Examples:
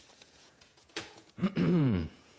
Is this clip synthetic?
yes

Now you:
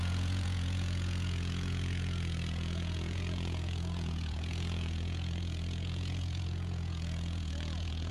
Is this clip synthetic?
yes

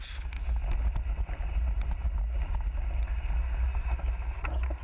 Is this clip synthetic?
no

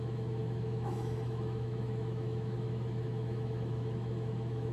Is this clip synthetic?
yes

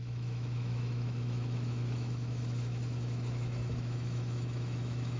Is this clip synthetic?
yes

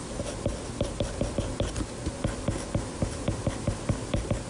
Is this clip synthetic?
no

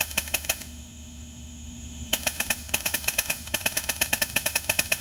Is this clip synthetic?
yes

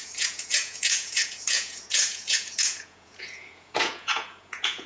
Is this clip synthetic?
yes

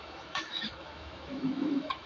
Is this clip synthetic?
yes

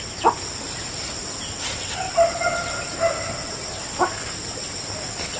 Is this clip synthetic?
no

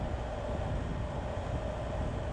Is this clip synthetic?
no